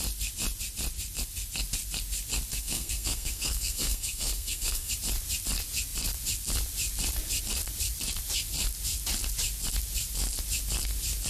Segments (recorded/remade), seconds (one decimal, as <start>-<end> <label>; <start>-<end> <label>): 0.0-2.5 recorded; 2.5-4.9 remade; 4.9-11.3 recorded